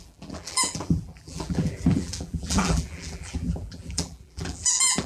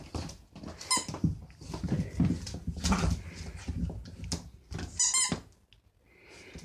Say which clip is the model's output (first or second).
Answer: first